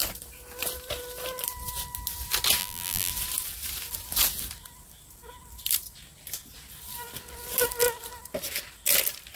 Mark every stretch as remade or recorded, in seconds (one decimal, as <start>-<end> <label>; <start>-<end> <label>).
0.0-2.6 recorded; 2.6-3.1 remade; 3.1-9.4 recorded